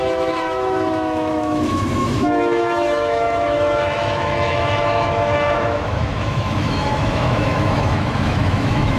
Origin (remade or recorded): remade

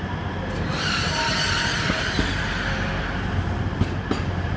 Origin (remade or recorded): recorded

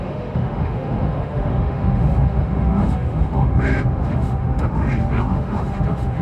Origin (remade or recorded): remade